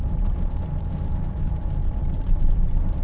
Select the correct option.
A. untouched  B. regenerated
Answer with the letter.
B